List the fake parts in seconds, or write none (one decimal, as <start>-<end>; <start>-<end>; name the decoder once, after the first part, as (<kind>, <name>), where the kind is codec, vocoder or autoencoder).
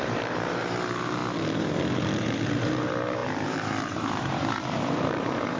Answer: 0.0-1.2 (vocoder, BigVGAN v2); 2.2-5.6